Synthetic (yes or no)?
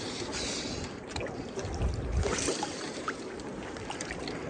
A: no